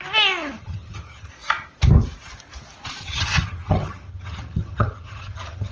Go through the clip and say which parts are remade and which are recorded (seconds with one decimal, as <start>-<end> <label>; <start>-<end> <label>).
0.0-0.6 recorded; 0.6-1.3 remade; 1.3-3.0 recorded; 3.0-5.7 remade